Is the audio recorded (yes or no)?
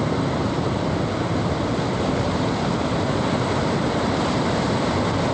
no